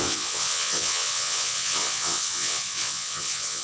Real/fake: fake